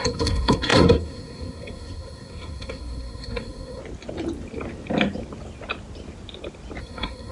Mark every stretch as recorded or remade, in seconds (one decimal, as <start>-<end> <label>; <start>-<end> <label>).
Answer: 0.0-3.8 remade; 3.8-6.8 recorded; 6.8-7.3 remade